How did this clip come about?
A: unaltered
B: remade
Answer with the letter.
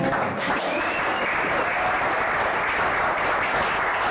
A